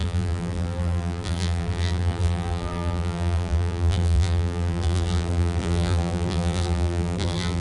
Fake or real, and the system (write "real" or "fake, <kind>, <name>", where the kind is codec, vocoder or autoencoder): fake, vocoder, BigVGAN v2